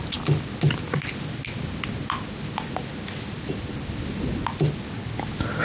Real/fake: real